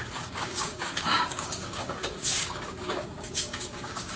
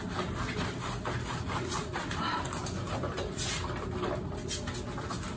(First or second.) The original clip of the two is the second